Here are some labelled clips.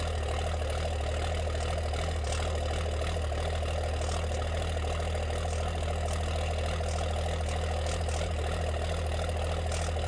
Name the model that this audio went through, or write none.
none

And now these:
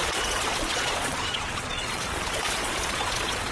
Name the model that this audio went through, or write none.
vocoder, Vocos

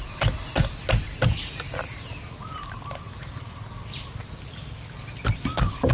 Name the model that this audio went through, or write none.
none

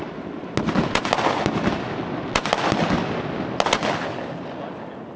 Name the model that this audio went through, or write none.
none